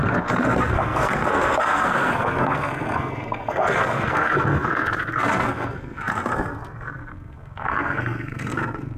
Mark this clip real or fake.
fake